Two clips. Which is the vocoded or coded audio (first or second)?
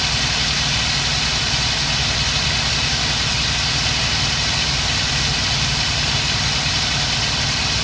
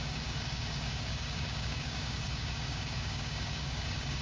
second